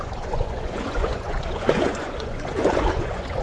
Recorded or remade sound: remade